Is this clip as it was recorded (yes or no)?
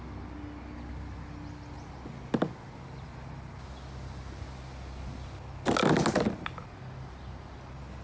yes